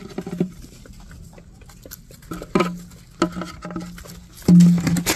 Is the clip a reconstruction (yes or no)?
no